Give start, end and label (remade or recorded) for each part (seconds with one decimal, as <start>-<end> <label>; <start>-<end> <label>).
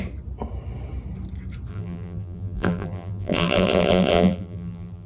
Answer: 0.0-1.7 recorded; 1.7-5.1 remade